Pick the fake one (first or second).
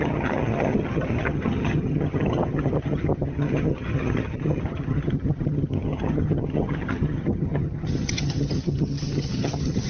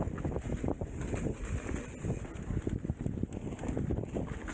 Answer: first